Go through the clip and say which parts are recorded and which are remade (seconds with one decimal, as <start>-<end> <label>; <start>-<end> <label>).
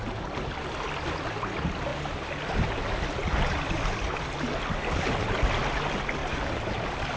0.0-7.2 recorded